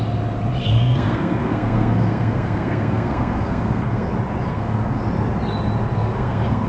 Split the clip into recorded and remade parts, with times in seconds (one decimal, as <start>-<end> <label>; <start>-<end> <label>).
0.0-0.6 recorded; 0.6-4.1 remade; 4.1-4.5 recorded; 4.5-5.0 remade; 5.0-5.9 recorded; 5.9-6.7 remade